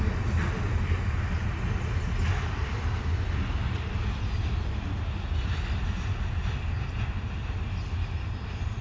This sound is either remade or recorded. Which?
recorded